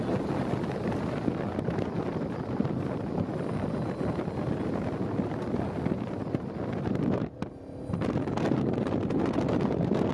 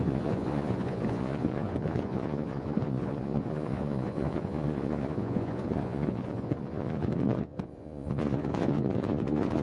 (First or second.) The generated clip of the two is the second